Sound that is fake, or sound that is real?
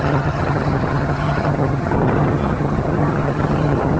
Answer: fake